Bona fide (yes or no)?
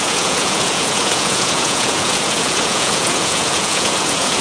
no